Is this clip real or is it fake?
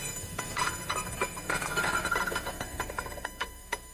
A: fake